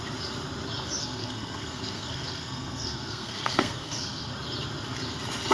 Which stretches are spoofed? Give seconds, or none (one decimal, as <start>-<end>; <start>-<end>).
1.0-4.3